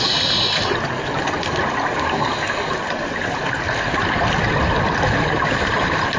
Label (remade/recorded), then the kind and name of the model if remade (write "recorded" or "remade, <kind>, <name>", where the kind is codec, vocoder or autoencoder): recorded